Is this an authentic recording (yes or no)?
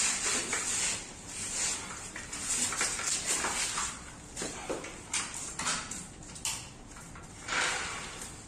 no